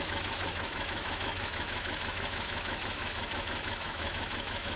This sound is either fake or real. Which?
fake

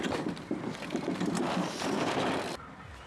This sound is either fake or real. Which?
real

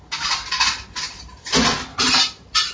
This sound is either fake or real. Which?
real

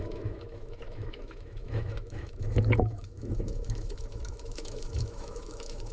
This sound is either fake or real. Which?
fake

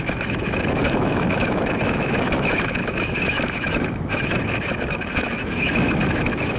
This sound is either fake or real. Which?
fake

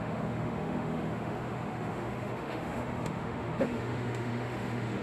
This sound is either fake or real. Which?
fake